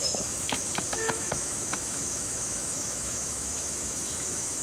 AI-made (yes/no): yes